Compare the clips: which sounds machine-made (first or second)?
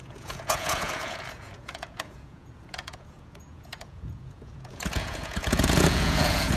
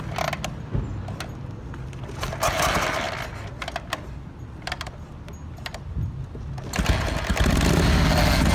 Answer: first